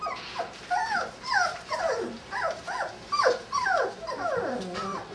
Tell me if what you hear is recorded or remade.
recorded